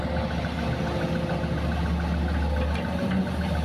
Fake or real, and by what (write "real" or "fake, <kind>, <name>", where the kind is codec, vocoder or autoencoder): real